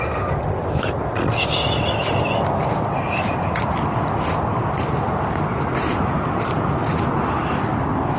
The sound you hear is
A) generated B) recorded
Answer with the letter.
B